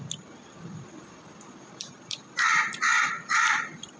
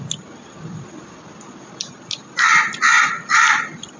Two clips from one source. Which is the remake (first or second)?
first